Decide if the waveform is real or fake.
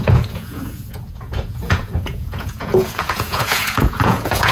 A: fake